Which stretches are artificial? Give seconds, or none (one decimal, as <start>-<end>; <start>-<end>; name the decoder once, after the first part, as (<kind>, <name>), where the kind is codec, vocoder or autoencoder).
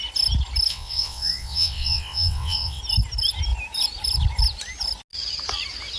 0.7-2.8 (vocoder, WaveNeXt)